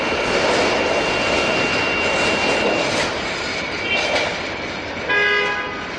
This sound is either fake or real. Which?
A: real